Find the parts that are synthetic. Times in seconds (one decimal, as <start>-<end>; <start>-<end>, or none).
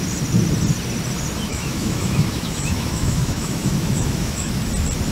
1.5-4.6